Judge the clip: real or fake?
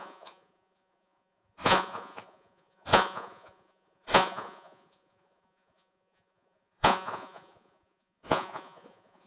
fake